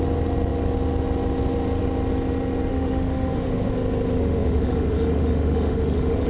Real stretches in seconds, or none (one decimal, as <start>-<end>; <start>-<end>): 0.0-2.7; 3.7-4.2